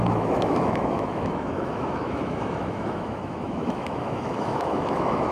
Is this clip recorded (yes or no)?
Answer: no